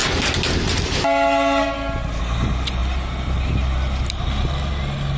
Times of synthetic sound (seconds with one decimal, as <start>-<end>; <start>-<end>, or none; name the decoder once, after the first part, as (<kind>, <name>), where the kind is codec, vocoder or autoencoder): none